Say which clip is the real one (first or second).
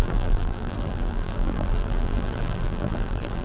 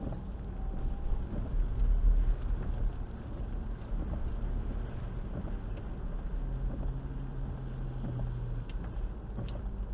second